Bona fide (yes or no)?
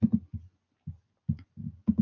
yes